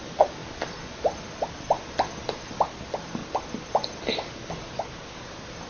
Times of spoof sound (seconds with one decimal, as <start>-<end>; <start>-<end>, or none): 0.0-0.4; 2.6-3.2; 4.5-5.7